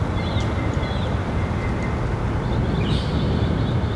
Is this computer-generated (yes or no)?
no